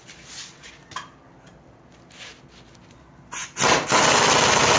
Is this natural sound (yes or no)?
yes